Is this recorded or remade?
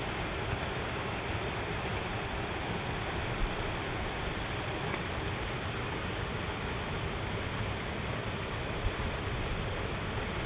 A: recorded